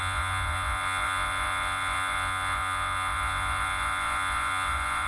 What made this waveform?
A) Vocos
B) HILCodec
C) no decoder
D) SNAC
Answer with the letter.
A